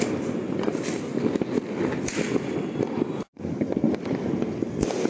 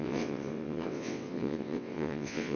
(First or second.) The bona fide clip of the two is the first